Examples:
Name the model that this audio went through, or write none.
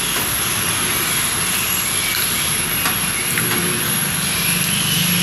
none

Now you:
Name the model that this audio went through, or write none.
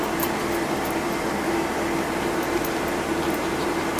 none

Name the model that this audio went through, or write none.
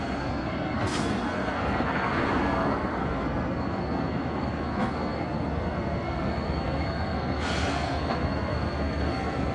codec, SNAC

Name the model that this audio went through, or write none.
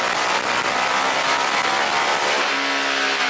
none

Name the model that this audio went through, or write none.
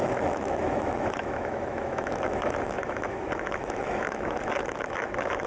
autoencoder, DAC-VAE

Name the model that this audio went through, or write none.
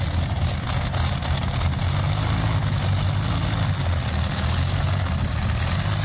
none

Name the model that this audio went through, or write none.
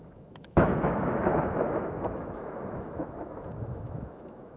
autoencoder, DAC-VAE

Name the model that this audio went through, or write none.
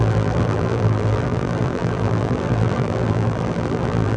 vocoder, BigVGAN v2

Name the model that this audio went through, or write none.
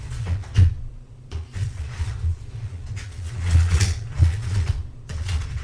vocoder, Vocos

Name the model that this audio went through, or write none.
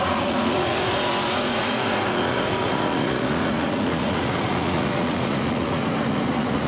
vocoder, Vocos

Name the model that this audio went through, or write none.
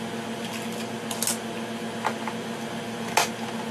none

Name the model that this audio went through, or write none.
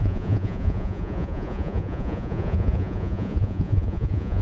vocoder, Vocos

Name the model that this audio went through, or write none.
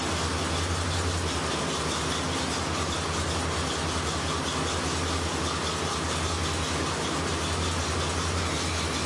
none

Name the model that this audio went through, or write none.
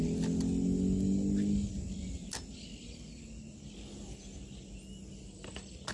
none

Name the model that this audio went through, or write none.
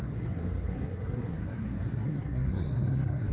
codec, SNAC